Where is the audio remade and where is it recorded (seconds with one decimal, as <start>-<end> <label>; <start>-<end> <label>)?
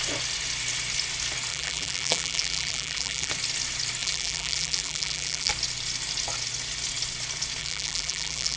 0.0-1.5 recorded; 1.5-3.3 remade; 3.3-4.0 recorded; 4.0-5.5 remade; 5.5-7.6 recorded; 7.6-8.6 remade